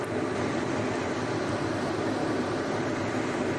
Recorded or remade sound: remade